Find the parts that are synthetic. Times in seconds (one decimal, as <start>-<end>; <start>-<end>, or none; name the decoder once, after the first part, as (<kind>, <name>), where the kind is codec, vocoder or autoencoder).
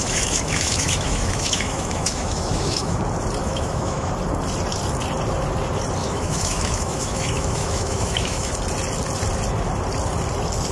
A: 0.0-3.0 (autoencoder, DAC-VAE); 3.4-4.1; 6.0-8.5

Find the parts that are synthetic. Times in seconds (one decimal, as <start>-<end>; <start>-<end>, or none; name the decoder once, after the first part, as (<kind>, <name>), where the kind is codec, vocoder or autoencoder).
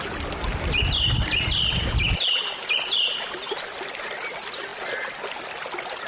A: none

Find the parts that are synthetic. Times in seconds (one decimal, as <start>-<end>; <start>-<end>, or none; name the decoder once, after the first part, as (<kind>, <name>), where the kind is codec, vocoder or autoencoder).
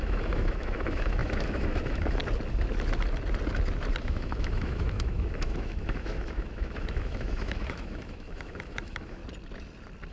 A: 0.0-2.2 (autoencoder, DAC-VAE); 4.0-9.2